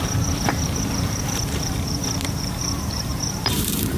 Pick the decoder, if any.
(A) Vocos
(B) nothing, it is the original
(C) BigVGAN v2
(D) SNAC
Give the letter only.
C